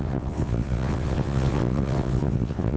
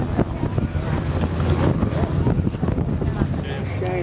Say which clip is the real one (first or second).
second